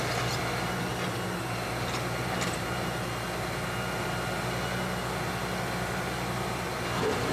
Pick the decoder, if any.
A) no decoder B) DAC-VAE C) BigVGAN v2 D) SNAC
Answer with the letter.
A